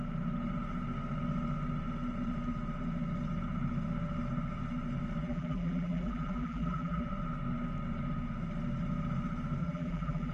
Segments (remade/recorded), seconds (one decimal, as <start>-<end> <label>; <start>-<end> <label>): 0.0-5.2 recorded; 5.2-7.1 remade; 7.1-9.6 recorded; 9.6-10.3 remade